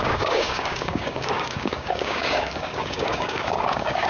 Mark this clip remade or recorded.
remade